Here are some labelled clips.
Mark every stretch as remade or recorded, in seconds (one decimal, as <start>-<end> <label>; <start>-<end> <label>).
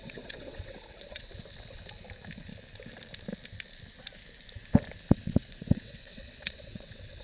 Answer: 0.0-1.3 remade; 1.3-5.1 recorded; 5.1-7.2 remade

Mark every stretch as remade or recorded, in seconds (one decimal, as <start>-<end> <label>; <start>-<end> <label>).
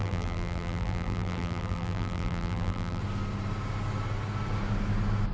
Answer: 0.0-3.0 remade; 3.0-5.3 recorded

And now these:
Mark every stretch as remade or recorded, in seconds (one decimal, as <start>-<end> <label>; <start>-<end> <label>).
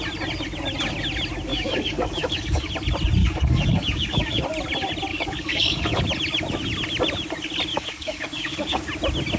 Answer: 0.0-1.5 recorded; 1.5-2.7 remade; 2.7-3.2 recorded; 3.2-4.4 remade; 4.4-5.1 recorded; 5.1-6.0 remade; 6.0-7.7 recorded; 7.7-8.8 remade; 8.8-9.4 recorded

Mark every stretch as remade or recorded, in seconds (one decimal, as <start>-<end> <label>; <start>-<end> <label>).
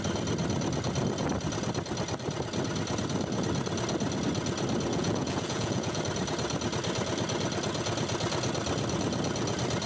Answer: 0.0-4.9 recorded; 4.9-6.0 remade; 6.0-9.9 recorded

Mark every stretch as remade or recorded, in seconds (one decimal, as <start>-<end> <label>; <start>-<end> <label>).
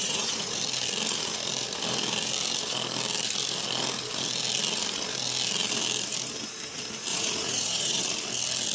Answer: 0.0-0.6 remade; 0.6-7.1 recorded; 7.1-8.0 remade; 8.0-8.7 recorded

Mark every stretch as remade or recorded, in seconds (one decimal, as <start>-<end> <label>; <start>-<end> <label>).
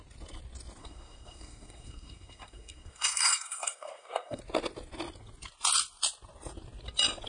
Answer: 0.0-0.8 recorded; 0.8-4.4 remade; 4.4-7.3 recorded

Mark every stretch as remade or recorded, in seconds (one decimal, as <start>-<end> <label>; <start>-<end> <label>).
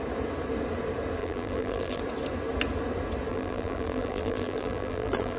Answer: 0.0-1.2 recorded; 1.2-2.0 remade; 2.0-3.3 recorded; 3.3-5.4 remade